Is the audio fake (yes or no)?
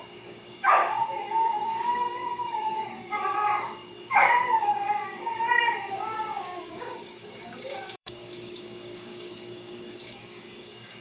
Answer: yes